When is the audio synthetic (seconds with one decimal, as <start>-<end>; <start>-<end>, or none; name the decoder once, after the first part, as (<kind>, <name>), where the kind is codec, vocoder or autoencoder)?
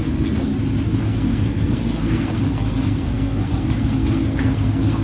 0.0-0.5 (codec, SNAC); 1.0-5.0